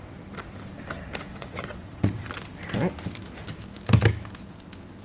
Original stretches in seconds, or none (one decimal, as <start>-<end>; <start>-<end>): 0.0-1.3; 2.3-5.0